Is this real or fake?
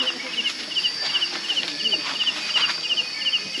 real